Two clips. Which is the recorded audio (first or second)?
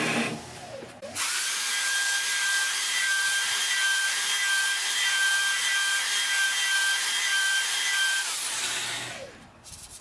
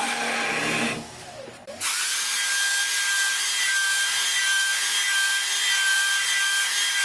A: second